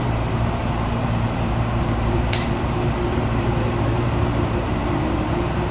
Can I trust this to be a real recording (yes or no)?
no